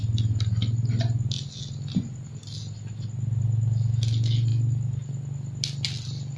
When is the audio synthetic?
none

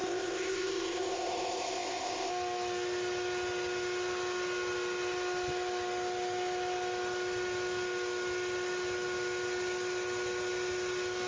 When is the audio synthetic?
0.0-2.3 (codec, ZipCodec)